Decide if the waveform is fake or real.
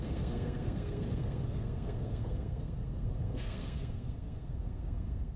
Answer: fake